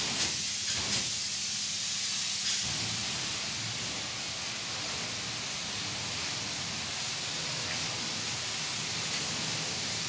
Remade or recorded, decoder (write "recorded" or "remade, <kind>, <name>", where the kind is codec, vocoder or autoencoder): recorded